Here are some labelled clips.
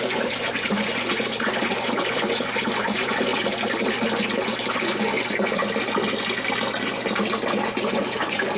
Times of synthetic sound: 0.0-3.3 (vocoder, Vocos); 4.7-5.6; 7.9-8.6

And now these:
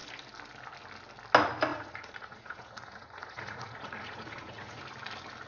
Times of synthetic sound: 1.7-4.8 (vocoder, Vocos)

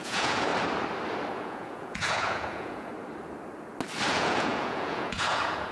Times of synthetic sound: 0.0-0.5 (vocoder, Vocos); 1.3-2.9; 4.1-5.7

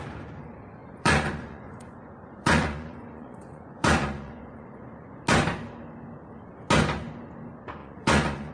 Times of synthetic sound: 0.8-5.2 (vocoder, Vocos); 7.8-8.5

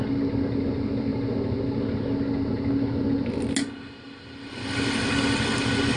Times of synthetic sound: none

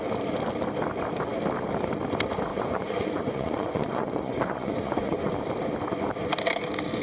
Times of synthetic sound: 2.5-5.3 (vocoder, Vocos)

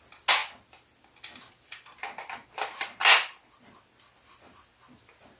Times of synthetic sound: none

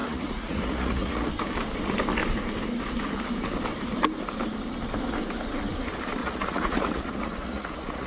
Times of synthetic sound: 0.0-1.3 (vocoder, Vocos); 6.2-8.1